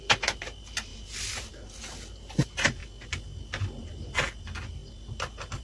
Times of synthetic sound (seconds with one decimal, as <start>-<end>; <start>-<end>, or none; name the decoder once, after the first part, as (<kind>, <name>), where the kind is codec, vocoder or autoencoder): none